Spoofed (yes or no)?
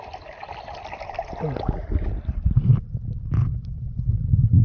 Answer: no